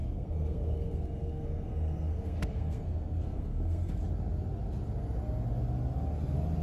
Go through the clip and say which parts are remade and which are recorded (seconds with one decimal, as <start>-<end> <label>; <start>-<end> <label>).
0.0-4.0 remade; 4.0-6.6 recorded

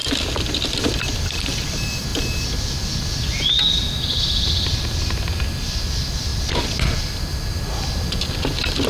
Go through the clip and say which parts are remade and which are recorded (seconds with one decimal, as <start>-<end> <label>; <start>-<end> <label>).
0.0-0.7 remade; 0.7-8.9 recorded

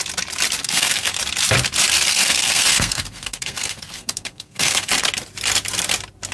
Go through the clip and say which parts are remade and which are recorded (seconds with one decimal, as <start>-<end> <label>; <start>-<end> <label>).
0.0-0.6 recorded; 0.6-1.2 remade; 1.2-2.1 recorded; 2.1-4.9 remade; 4.9-6.3 recorded